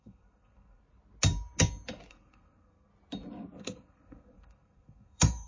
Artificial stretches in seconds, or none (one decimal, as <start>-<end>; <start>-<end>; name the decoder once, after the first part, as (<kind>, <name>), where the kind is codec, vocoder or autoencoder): 0.0-0.8 (codec, SNAC); 2.1-2.9; 3.6-5.5